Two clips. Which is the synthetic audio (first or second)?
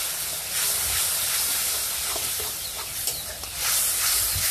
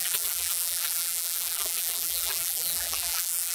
second